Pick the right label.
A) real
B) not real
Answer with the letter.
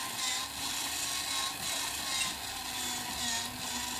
A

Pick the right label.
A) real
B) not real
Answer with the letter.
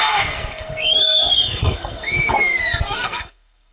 B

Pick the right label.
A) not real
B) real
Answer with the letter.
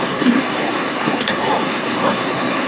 A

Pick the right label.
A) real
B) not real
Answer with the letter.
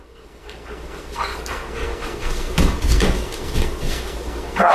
B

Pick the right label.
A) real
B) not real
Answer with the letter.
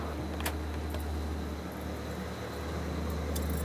A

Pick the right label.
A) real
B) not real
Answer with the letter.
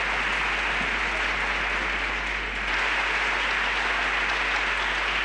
A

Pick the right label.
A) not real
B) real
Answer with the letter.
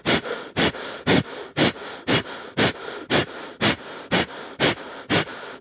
B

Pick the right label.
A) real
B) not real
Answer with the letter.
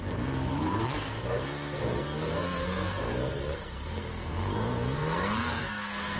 B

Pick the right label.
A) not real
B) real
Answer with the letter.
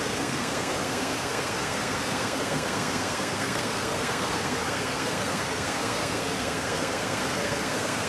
A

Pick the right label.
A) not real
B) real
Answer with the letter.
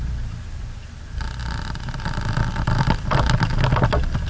B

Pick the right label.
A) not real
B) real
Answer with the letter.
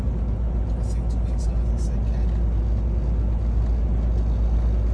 B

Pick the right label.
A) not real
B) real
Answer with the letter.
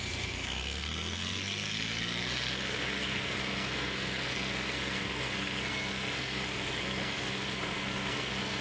A